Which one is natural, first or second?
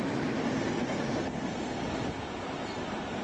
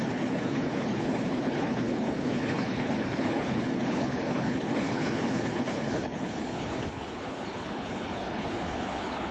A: first